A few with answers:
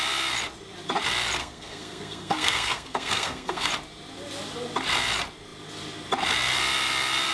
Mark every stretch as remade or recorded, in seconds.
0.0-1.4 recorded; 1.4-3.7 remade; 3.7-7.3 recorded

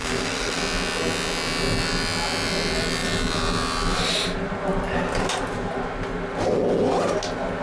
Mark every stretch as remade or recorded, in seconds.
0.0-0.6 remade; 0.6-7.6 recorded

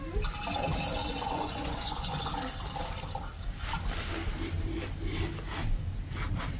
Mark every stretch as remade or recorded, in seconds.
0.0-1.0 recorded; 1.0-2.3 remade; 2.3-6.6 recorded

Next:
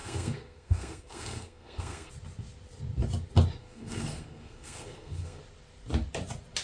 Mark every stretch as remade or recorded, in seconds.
0.0-2.1 remade; 2.1-3.6 recorded; 3.6-5.4 remade; 5.4-6.6 recorded

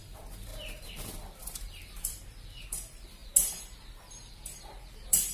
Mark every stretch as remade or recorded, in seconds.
0.0-0.5 remade; 0.5-1.4 recorded; 1.4-3.2 remade; 3.2-4.0 recorded; 4.0-5.3 remade